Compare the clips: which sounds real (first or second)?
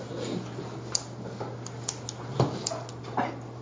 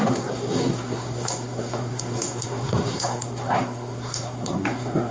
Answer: first